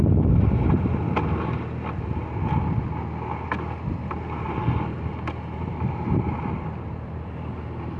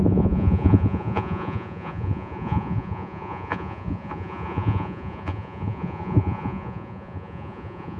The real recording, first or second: first